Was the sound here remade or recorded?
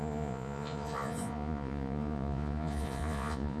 remade